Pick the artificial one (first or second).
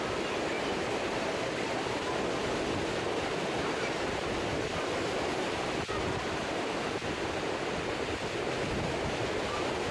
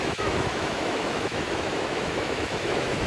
second